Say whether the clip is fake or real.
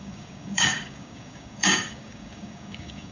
fake